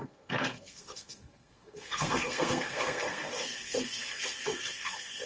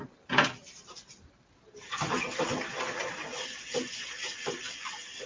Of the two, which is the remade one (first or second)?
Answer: first